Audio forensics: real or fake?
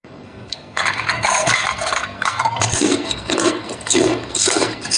fake